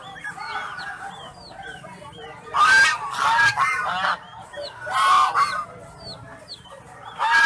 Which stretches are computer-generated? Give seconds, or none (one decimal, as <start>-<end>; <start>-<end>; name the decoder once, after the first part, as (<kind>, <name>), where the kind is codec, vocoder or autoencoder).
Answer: none